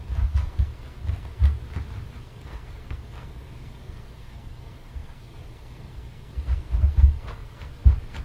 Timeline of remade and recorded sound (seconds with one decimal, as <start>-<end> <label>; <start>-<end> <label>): 0.0-1.6 remade; 1.6-2.2 recorded; 2.2-8.2 remade